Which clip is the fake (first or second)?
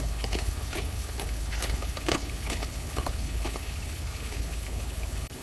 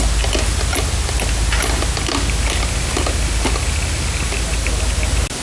first